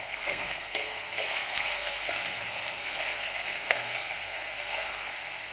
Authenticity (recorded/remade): remade